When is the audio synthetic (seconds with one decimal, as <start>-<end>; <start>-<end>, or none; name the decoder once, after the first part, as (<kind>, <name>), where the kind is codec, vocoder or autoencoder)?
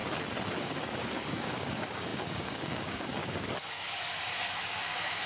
0.6-5.3 (codec, DAC)